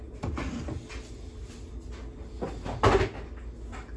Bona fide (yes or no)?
yes